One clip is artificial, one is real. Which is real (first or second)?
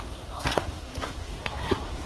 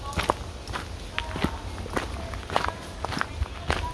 second